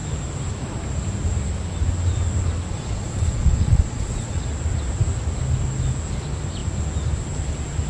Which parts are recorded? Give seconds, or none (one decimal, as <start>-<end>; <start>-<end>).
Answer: 0.0-2.7; 4.4-7.9